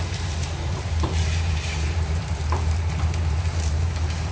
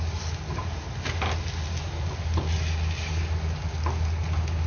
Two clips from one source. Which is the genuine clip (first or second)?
second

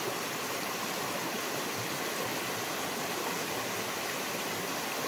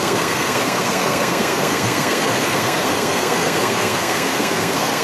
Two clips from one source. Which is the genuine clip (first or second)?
first